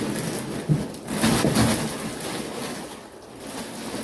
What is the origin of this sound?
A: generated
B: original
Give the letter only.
B